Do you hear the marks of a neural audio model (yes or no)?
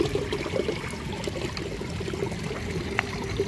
no